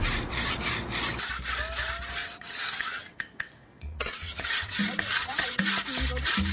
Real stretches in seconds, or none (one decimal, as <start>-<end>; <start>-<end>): 0.0-2.2; 5.6-6.5